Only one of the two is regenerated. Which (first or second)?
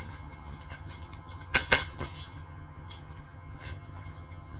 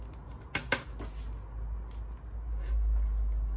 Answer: first